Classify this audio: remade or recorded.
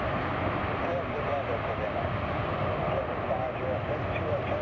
recorded